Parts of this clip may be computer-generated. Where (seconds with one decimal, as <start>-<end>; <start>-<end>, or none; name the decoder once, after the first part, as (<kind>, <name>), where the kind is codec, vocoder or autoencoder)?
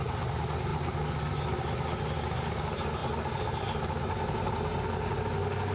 none